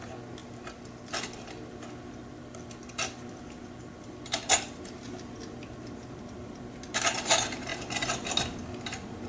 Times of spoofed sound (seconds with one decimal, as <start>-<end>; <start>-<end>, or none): none